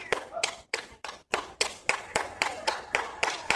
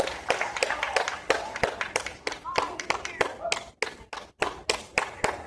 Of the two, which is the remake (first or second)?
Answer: first